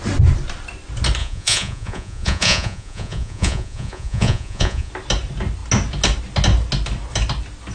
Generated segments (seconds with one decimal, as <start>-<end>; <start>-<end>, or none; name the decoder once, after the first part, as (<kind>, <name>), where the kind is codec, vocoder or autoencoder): 1.2-4.9 (vocoder, Vocos)